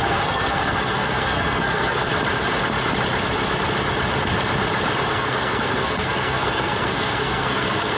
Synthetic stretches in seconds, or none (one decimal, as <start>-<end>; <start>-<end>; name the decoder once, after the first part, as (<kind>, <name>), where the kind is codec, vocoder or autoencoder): 0.0-2.1 (codec, SNAC); 5.1-8.0

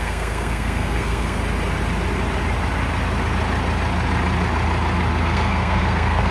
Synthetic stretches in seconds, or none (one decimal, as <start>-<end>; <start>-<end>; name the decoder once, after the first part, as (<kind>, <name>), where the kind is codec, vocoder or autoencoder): 0.0-1.4 (codec, SNAC); 5.2-6.3

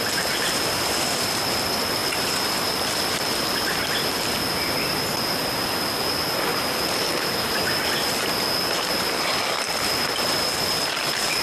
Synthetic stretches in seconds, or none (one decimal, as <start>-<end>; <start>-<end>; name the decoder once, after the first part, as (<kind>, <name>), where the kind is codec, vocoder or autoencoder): none

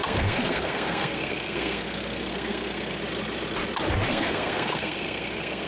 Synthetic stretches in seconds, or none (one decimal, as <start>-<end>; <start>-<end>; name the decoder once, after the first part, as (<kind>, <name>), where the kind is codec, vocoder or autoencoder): 0.0-3.0 (codec, SNAC); 4.1-5.7

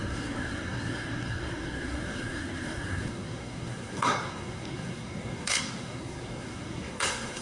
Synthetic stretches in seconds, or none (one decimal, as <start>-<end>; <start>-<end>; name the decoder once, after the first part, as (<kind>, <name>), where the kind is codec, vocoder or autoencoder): 0.0-7.4 (codec, SNAC)

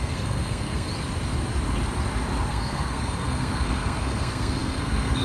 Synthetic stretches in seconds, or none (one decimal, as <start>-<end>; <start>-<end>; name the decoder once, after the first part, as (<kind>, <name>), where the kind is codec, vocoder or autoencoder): 0.0-0.9 (codec, SNAC); 2.5-5.2

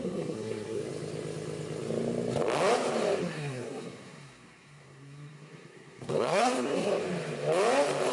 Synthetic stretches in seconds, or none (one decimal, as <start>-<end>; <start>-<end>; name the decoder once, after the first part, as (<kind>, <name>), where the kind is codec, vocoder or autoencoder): 0.0-0.8 (codec, SNAC); 3.2-7.0

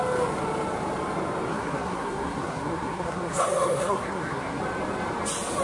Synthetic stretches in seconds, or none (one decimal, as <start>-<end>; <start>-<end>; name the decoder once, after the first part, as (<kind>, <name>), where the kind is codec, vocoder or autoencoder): 1.5-4.6 (codec, SNAC)